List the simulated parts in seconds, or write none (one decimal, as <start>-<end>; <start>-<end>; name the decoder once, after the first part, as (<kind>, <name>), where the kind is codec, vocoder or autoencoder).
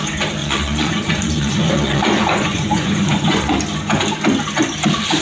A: 0.4-3.5 (vocoder, Vocos)